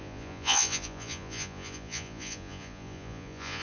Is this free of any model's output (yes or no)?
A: no